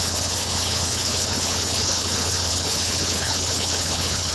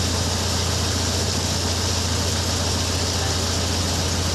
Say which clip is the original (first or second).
second